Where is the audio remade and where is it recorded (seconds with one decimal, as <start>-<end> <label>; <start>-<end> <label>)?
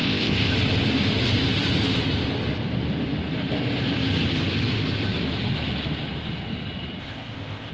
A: 0.0-0.5 remade; 0.5-7.0 recorded; 7.0-7.7 remade